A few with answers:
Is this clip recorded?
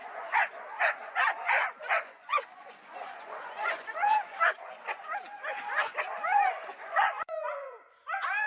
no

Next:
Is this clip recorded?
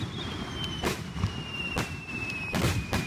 yes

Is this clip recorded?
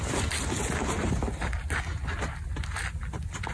yes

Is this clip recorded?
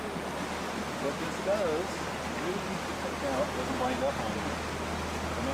yes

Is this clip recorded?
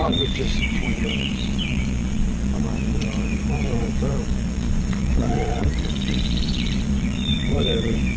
no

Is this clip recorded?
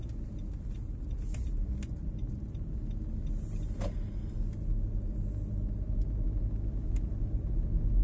yes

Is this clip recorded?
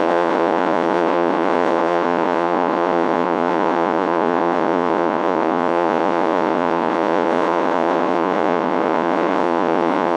no